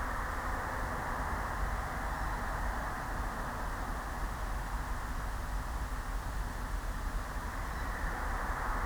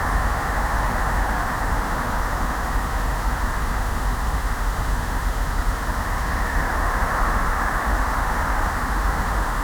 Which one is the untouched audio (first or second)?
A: first